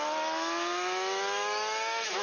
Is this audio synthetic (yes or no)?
yes